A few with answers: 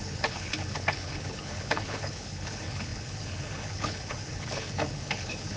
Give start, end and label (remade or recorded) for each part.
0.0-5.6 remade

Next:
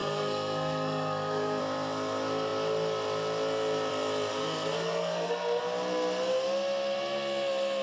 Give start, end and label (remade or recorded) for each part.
0.0-1.6 remade; 1.6-4.3 recorded; 4.3-5.6 remade; 5.6-7.8 recorded

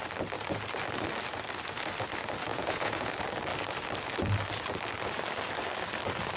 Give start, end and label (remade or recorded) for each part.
0.0-2.5 recorded; 2.5-3.1 remade; 3.1-6.4 recorded

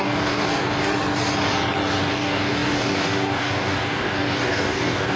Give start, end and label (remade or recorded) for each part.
0.0-0.9 remade; 0.9-2.0 recorded; 2.0-5.2 remade

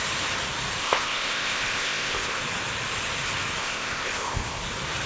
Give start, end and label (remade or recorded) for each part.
0.0-0.8 recorded; 0.8-2.4 remade; 2.4-3.6 recorded; 3.6-4.6 remade; 4.6-5.1 recorded

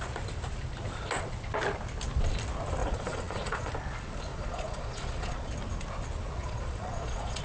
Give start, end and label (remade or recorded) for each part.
0.0-2.8 recorded; 2.8-3.7 remade; 3.7-4.3 recorded; 4.3-5.5 remade; 5.5-6.4 recorded; 6.4-7.4 remade

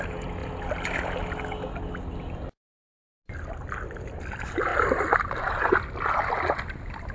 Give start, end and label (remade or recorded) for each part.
0.0-7.1 recorded

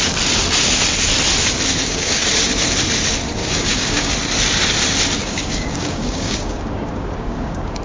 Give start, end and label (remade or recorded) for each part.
0.0-1.8 recorded; 1.8-2.3 remade; 2.3-3.4 recorded; 3.4-4.1 remade; 4.1-5.2 recorded; 5.2-7.8 remade